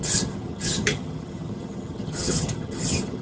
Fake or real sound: fake